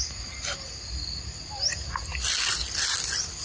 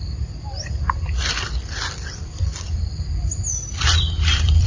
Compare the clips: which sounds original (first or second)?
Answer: first